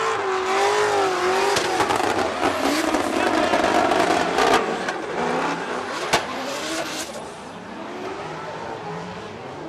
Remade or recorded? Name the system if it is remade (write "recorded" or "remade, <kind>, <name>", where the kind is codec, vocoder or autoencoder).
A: recorded